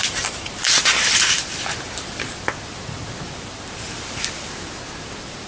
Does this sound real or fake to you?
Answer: fake